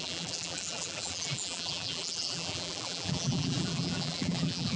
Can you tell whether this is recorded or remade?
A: remade